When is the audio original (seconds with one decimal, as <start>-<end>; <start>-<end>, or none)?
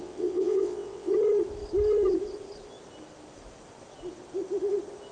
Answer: 1.1-5.1